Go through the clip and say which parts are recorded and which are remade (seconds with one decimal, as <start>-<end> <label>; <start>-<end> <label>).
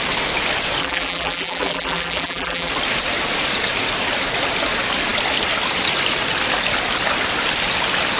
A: 0.0-0.8 recorded; 0.8-2.7 remade; 2.7-8.2 recorded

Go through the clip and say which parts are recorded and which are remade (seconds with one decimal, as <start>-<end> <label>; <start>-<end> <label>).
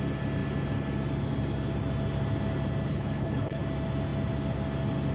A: 0.0-2.9 recorded; 2.9-3.6 remade; 3.6-5.1 recorded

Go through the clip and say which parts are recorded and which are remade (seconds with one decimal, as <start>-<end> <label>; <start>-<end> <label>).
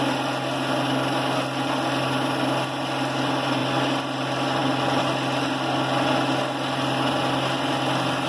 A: 0.0-8.3 recorded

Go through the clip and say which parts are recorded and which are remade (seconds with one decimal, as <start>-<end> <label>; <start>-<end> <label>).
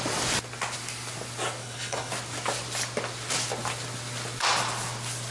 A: 0.0-1.6 recorded; 1.6-2.1 remade; 2.1-5.3 recorded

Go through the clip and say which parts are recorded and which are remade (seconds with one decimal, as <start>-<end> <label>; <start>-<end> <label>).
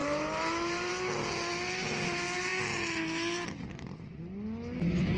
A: 0.0-0.9 remade; 0.9-5.2 recorded